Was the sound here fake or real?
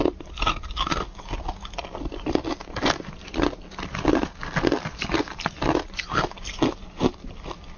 real